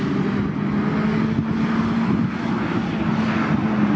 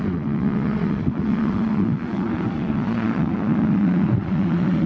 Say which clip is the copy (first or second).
second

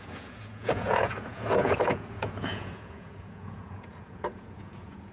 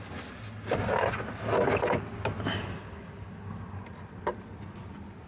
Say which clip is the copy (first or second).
first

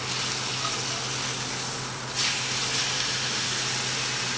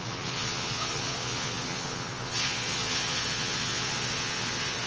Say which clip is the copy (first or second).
second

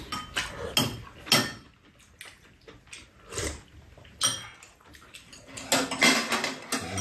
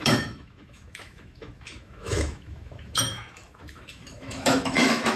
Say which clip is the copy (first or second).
second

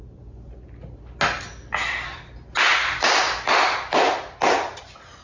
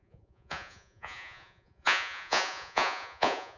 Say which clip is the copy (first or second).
second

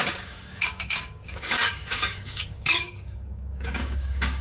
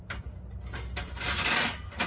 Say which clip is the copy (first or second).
first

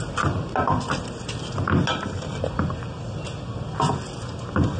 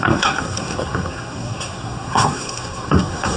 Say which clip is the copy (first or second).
second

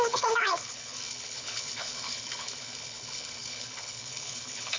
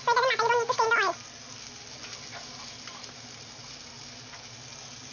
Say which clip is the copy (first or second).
first